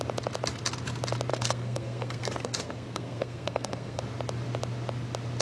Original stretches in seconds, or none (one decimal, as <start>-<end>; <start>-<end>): 0.0-1.3; 4.0-5.4